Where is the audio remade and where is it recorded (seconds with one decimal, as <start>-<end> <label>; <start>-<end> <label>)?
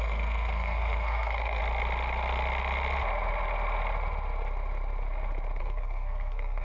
0.0-1.6 remade; 1.6-5.6 recorded; 5.6-6.6 remade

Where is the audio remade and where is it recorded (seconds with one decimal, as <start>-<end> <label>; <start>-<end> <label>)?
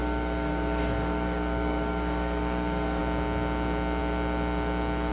0.0-3.0 remade; 3.0-5.1 recorded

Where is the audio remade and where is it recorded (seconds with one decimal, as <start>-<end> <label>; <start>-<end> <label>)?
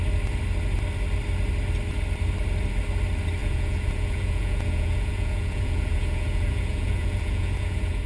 0.0-3.4 recorded; 3.4-8.1 remade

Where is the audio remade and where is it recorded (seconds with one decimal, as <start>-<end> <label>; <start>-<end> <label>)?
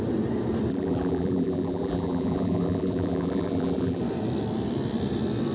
0.0-0.7 recorded; 0.7-4.0 remade; 4.0-5.5 recorded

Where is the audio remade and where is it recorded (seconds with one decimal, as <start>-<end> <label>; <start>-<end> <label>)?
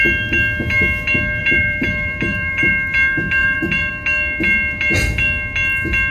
0.0-1.4 recorded; 1.4-2.7 remade; 2.7-3.4 recorded; 3.4-3.9 remade; 3.9-6.1 recorded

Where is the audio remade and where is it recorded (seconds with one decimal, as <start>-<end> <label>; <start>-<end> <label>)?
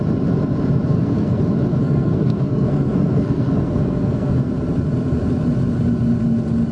0.0-0.9 recorded; 0.9-1.4 remade; 1.4-1.8 recorded; 1.8-4.5 remade; 4.5-6.7 recorded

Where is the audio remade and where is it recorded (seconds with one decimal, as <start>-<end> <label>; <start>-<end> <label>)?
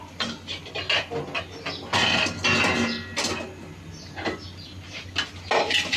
0.0-6.0 recorded